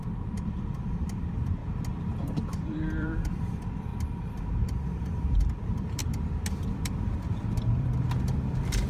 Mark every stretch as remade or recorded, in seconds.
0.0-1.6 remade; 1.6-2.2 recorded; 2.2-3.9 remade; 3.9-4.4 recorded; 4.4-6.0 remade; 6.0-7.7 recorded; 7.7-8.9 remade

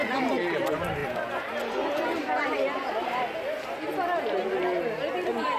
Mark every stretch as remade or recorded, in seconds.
0.0-5.6 recorded